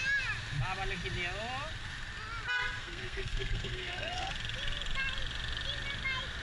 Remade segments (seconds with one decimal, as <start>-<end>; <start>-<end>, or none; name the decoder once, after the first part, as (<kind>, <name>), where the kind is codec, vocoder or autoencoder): 2.8-4.3 (codec, SNAC)

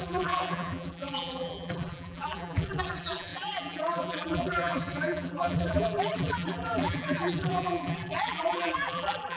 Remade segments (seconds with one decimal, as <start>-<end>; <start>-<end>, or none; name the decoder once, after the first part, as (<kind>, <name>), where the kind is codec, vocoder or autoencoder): 0.0-9.4 (vocoder, BigVGAN v2)

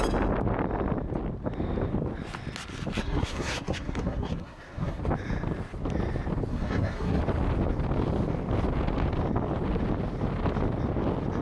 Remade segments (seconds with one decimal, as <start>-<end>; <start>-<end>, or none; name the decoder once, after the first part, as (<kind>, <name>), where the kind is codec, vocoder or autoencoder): 3.0-5.0 (codec, SNAC); 6.5-7.2

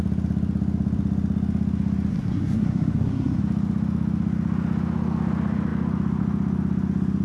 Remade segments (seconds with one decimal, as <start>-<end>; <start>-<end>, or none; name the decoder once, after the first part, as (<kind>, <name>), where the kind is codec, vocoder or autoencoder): 2.1-3.4 (codec, SNAC)